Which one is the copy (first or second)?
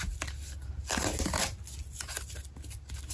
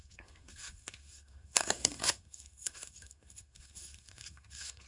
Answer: second